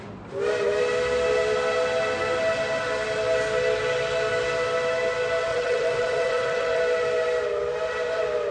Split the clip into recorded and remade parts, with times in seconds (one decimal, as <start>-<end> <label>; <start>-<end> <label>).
0.0-5.5 recorded; 5.5-6.8 remade; 6.8-8.5 recorded